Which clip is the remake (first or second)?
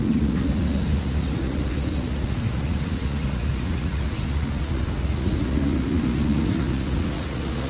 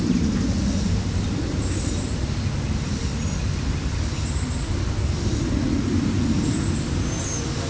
first